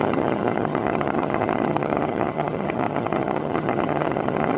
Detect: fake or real fake